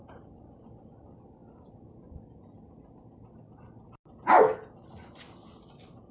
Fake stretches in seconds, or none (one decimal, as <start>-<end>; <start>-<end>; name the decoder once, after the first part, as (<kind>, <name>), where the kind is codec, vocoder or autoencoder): none